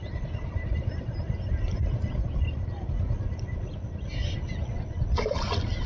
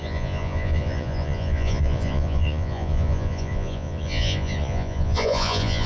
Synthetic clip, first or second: second